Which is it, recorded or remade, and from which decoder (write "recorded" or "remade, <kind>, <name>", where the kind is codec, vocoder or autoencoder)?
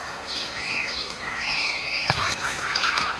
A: remade, codec, SNAC